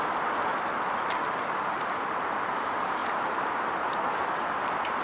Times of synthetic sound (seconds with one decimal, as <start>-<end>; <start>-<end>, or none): 0.0-0.5; 1.6-3.0; 3.5-5.0